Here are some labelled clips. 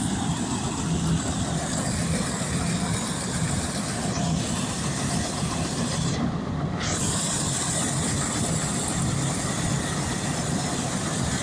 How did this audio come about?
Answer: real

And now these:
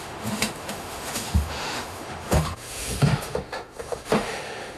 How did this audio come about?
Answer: fake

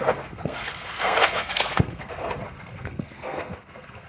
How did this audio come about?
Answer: fake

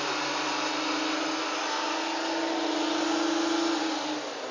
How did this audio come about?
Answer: real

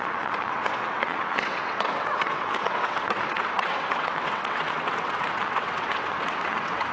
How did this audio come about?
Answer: fake